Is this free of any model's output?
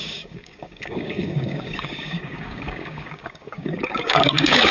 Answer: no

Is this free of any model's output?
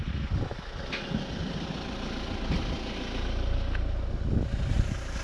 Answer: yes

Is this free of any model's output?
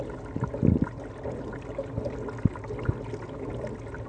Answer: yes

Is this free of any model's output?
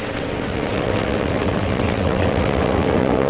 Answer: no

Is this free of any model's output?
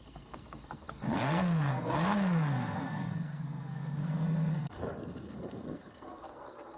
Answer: no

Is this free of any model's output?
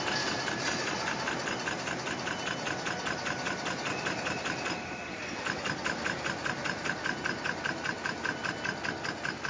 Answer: yes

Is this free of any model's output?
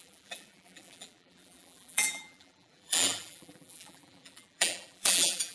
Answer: no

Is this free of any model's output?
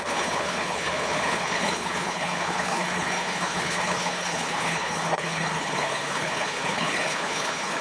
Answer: no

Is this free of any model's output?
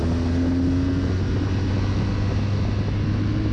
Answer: yes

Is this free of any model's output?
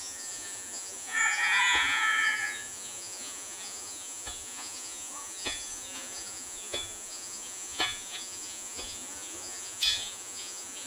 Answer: no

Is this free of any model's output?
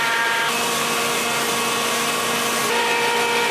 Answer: yes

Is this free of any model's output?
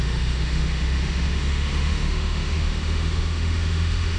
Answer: no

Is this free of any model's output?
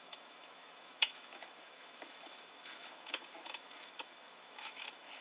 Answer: no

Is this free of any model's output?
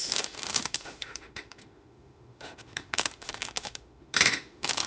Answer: no